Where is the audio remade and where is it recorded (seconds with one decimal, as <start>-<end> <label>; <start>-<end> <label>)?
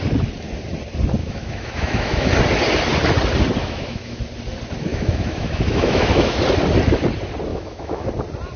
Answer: 0.0-1.2 recorded; 1.2-2.3 remade; 2.3-3.6 recorded; 3.6-4.2 remade; 4.2-4.9 recorded; 4.9-6.4 remade; 6.4-7.5 recorded; 7.5-8.1 remade; 8.1-8.6 recorded